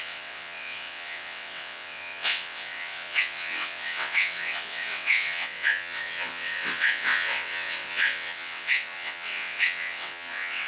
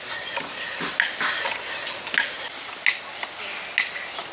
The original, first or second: second